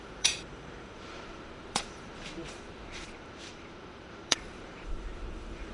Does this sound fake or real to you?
fake